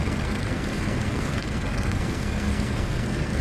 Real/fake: fake